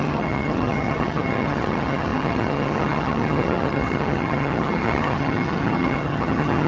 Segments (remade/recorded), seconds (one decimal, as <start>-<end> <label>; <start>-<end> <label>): 0.0-6.7 remade

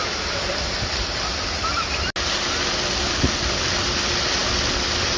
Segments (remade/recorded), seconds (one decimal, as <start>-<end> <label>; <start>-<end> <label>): 0.0-5.2 recorded

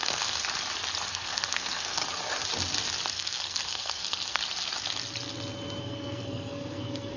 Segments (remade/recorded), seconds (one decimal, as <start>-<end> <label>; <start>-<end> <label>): 0.0-0.4 remade; 0.4-1.1 recorded; 1.1-2.0 remade; 2.0-3.1 recorded; 3.1-4.4 remade; 4.4-5.8 recorded; 5.8-7.2 remade

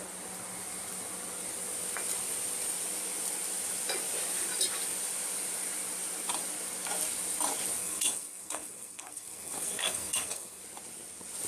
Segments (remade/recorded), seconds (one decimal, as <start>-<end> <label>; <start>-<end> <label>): 0.0-7.8 recorded; 7.8-10.6 remade; 10.6-11.5 recorded

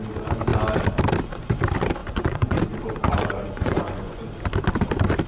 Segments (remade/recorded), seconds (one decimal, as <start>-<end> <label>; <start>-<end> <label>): 0.0-2.0 recorded; 2.0-2.6 remade; 2.6-3.0 recorded; 3.0-4.2 remade; 4.2-5.3 recorded

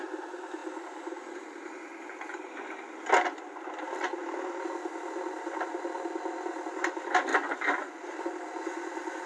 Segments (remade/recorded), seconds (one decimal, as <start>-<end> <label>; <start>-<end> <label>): 0.0-9.3 recorded

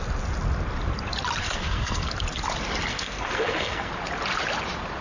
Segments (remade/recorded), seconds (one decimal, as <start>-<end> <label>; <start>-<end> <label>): 0.0-1.4 recorded; 1.4-2.1 remade; 2.1-2.9 recorded; 2.9-3.9 remade; 3.9-5.0 recorded